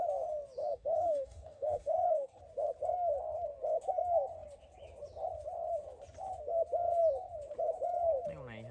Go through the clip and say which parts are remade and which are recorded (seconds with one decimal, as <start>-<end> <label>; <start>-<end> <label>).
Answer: 0.0-0.6 recorded; 0.6-2.4 remade; 2.4-8.7 recorded